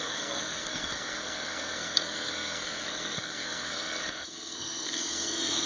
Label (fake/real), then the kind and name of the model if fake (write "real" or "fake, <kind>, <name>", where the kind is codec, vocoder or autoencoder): fake, codec, SNAC